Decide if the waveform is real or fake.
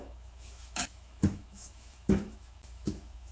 fake